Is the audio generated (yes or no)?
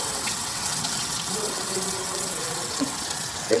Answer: yes